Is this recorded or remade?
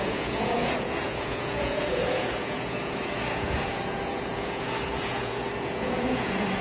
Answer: remade